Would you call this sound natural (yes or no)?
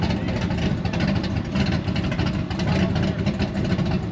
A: yes